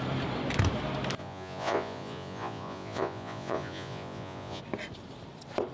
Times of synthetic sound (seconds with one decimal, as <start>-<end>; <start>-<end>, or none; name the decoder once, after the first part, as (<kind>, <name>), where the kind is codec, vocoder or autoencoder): 1.2-4.6 (vocoder, Vocos)